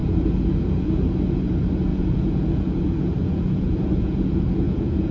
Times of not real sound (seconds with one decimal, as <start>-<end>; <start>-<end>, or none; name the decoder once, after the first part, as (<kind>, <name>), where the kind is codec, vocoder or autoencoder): 0.0-1.1 (vocoder, Vocos); 1.9-5.1

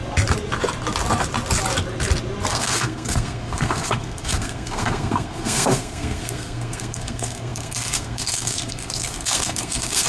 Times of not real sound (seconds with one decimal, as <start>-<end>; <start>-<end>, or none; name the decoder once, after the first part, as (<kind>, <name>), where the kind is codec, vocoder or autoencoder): 2.5-10.1 (codec, SNAC)

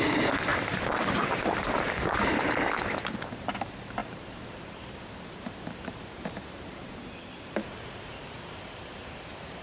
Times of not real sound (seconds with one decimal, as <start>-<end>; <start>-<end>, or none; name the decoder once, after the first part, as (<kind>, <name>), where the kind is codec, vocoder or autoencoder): 0.5-2.4 (vocoder, BigVGAN v2); 4.0-9.1

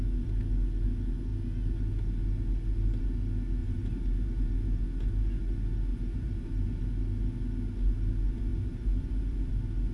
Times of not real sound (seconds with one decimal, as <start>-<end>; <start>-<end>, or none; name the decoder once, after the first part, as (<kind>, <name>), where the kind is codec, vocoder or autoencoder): 3.6-4.5 (vocoder, BigVGAN v2); 5.9-6.9; 8.5-9.5